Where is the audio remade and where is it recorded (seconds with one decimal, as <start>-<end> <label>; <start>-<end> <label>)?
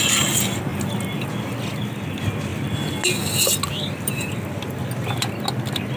0.0-6.0 recorded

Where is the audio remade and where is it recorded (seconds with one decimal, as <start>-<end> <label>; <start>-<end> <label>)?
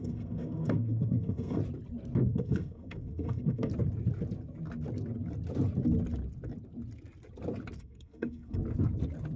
0.0-1.6 remade; 1.6-2.2 recorded; 2.2-3.7 remade; 3.7-7.8 recorded; 7.8-8.6 remade; 8.6-9.4 recorded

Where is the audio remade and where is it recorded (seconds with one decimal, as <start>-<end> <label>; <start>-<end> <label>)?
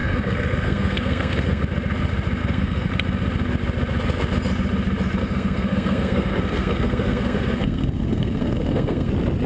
0.0-1.6 remade; 1.6-2.4 recorded; 2.4-2.9 remade; 2.9-5.2 recorded; 5.2-9.1 remade; 9.1-9.5 recorded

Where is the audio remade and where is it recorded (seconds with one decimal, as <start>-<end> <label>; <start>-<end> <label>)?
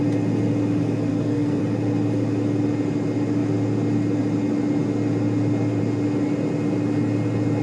0.0-1.1 recorded; 1.1-1.6 remade; 1.6-7.6 recorded